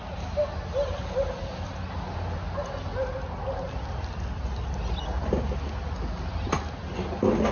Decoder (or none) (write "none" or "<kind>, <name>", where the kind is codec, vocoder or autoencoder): none